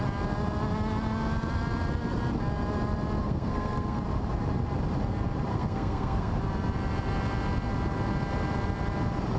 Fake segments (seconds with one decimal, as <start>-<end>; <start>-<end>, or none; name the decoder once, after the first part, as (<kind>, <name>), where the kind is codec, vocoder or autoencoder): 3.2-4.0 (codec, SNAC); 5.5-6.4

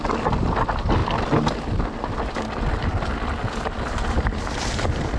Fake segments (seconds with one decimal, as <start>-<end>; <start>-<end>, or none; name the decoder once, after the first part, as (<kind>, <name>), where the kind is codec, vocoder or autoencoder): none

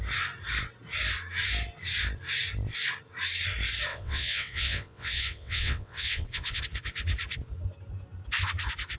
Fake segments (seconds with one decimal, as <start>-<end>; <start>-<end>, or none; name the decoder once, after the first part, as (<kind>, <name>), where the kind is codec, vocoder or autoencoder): 3.9-6.6 (vocoder, WaveNeXt)

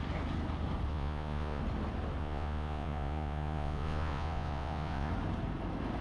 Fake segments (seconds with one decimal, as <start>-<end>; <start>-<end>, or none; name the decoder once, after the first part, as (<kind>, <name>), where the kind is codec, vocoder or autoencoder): 0.9-1.6 (vocoder, Vocos); 2.2-5.1

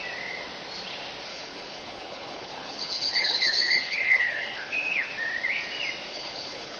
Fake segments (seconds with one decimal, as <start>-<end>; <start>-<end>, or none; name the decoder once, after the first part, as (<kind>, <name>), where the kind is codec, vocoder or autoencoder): 1.3-5.1 (codec, HILCodec); 6.1-6.8

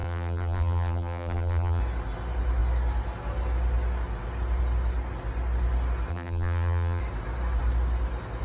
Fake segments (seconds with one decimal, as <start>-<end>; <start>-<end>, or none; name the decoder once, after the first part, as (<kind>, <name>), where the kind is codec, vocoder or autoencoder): 0.0-1.8 (vocoder, BigVGAN v2); 6.1-7.0